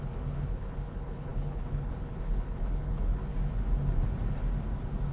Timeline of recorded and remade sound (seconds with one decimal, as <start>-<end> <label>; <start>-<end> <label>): 0.0-3.3 remade; 3.3-5.1 recorded